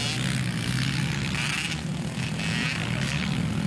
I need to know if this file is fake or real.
real